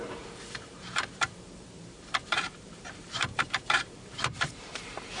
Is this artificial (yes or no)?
yes